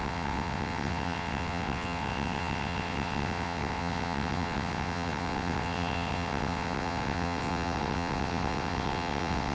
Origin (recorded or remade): remade